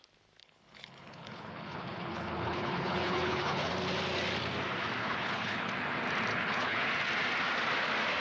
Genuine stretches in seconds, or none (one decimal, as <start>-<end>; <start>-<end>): 0.0-0.4; 3.7-5.0; 5.7-6.3; 6.8-8.2